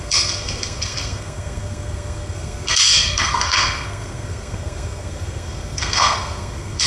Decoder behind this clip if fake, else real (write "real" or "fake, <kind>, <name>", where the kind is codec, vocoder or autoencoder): fake, codec, SNAC